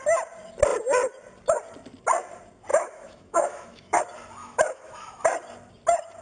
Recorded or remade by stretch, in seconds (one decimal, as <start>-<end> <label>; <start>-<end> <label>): 0.0-2.7 recorded; 2.7-4.0 remade; 4.0-4.4 recorded; 4.4-5.2 remade; 5.2-6.2 recorded